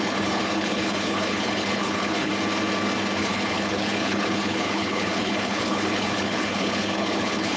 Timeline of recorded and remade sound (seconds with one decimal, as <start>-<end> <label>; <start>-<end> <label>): 0.0-2.3 remade; 2.3-3.2 recorded; 3.2-7.6 remade